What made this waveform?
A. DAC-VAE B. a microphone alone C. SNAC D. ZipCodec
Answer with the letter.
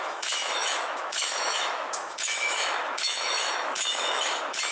A